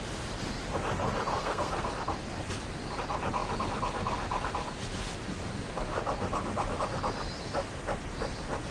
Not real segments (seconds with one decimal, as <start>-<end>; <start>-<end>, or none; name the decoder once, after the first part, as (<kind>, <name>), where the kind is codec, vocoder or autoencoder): 1.3-1.9 (codec, SNAC)